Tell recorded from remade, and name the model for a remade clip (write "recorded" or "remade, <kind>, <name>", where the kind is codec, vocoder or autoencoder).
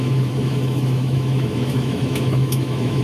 remade, autoencoder, DAC-VAE